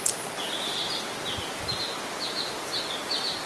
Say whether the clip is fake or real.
real